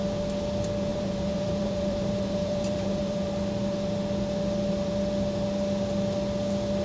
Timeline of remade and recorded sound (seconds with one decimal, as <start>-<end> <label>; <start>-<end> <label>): 0.0-0.9 recorded; 0.9-3.3 remade; 3.3-6.8 recorded